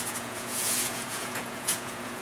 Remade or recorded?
remade